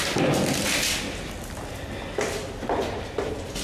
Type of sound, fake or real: real